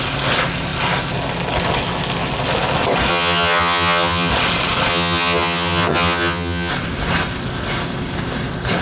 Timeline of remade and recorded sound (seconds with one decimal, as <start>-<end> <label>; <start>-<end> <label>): 0.0-3.1 recorded; 3.1-4.3 remade; 4.3-4.9 recorded; 4.9-6.7 remade; 6.7-8.8 recorded